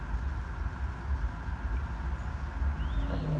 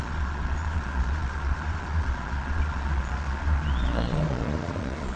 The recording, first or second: first